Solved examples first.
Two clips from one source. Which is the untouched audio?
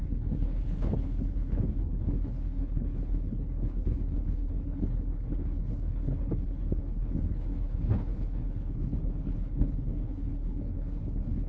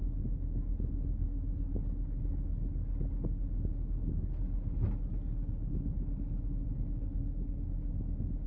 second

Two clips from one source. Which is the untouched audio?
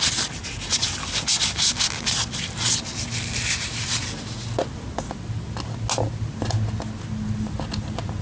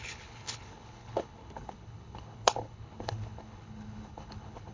first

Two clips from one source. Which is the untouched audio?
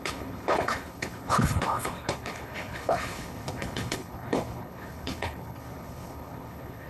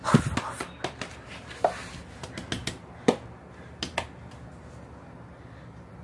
second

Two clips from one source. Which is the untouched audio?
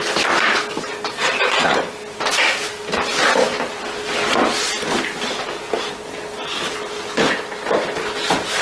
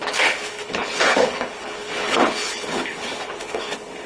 first